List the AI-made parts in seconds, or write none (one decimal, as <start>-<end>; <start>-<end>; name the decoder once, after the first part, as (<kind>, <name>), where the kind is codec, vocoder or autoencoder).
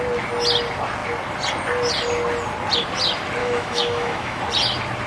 3.4-4.4 (autoencoder, DAC-VAE)